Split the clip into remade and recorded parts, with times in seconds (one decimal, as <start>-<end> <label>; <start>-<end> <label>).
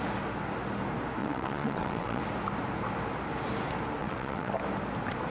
0.0-1.2 recorded; 1.2-2.2 remade; 2.2-4.0 recorded; 4.0-4.5 remade; 4.5-5.3 recorded